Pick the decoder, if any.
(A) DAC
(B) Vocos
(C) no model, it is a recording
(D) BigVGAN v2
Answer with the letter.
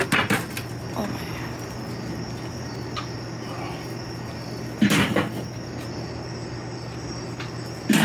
C